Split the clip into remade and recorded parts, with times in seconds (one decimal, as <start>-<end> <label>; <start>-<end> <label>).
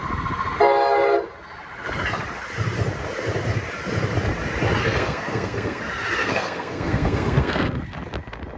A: 0.0-4.8 recorded; 4.8-5.8 remade; 5.8-6.2 recorded; 6.2-7.8 remade; 7.8-8.6 recorded